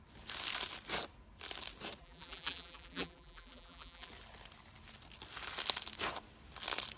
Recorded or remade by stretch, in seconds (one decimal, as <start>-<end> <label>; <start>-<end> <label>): 0.0-2.0 recorded; 2.0-4.1 remade; 4.1-7.0 recorded